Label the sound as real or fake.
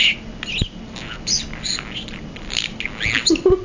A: real